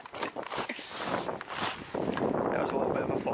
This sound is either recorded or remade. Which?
recorded